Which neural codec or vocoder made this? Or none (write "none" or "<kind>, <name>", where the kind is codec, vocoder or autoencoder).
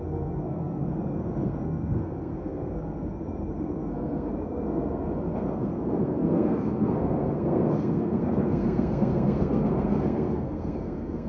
codec, SNAC